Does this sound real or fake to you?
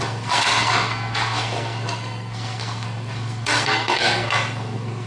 fake